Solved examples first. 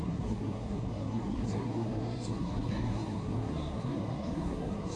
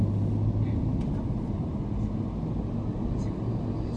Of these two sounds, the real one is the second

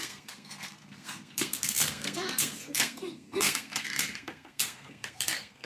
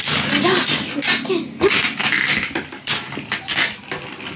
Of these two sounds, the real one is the second